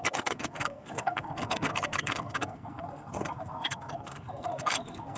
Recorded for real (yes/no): no